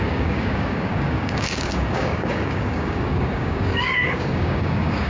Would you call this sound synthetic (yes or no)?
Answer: yes